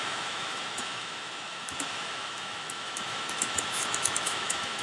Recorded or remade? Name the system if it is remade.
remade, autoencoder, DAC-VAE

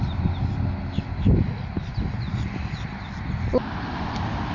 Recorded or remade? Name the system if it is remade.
recorded